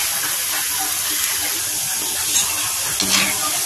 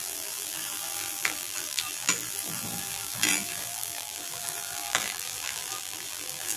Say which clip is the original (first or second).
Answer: first